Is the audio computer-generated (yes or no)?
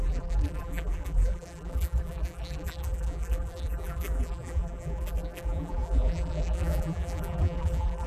yes